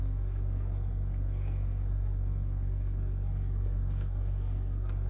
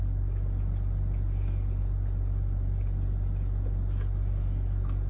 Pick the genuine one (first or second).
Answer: second